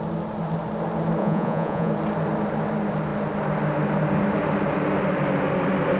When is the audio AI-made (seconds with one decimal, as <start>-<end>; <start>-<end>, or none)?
1.2-1.9